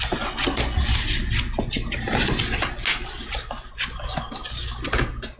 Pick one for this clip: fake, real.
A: real